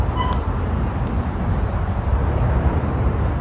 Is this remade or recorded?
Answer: recorded